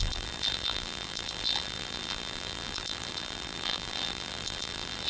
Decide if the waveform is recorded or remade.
remade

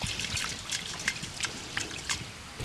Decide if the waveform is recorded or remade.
recorded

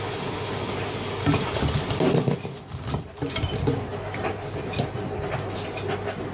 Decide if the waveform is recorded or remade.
recorded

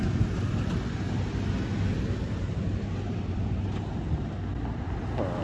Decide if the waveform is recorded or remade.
recorded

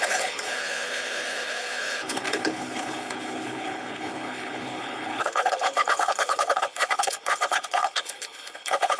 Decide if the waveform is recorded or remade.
remade